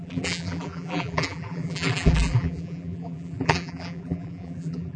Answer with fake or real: fake